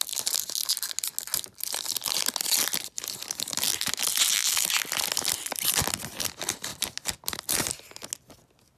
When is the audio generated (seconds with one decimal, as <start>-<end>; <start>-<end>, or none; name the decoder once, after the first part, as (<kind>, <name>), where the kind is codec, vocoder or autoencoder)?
none